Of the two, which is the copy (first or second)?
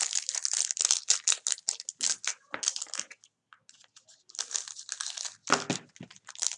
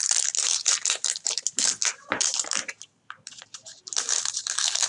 second